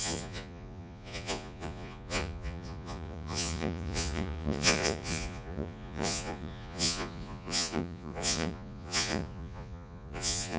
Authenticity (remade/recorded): remade